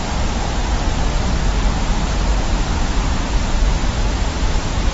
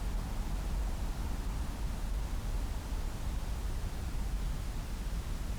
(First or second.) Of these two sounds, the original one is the second